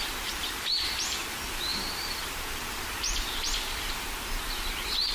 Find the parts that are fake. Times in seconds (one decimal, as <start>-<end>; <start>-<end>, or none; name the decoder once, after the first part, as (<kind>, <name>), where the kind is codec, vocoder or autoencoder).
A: 0.0-5.1 (vocoder, BigVGAN v2)